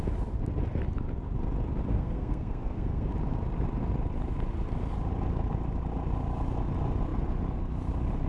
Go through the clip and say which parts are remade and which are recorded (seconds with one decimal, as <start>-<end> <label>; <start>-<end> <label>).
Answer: 0.0-1.9 recorded; 1.9-3.1 remade; 3.1-8.3 recorded